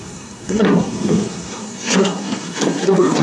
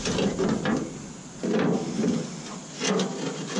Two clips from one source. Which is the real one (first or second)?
second